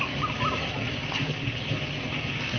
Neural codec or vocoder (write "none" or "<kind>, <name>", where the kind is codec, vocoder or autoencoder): none